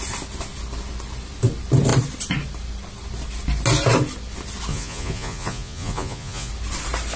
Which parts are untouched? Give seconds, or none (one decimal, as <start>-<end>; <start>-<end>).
0.0-4.7; 6.5-7.2